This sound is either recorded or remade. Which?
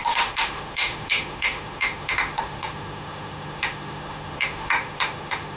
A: remade